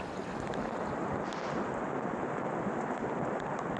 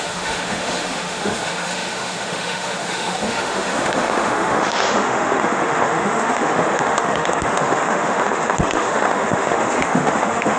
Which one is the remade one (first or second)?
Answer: second